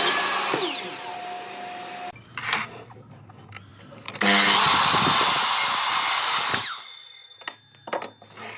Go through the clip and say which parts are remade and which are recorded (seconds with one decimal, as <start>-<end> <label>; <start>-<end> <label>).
0.0-8.6 recorded